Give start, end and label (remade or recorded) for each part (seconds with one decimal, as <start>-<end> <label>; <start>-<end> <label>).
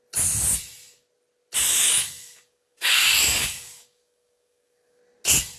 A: 0.0-1.7 recorded; 1.7-5.0 remade; 5.0-5.6 recorded